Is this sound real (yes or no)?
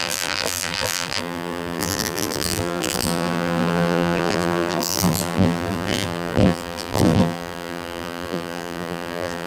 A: no